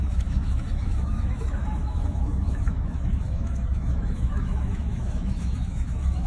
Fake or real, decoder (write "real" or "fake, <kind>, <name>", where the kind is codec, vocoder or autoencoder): fake, autoencoder, DAC-VAE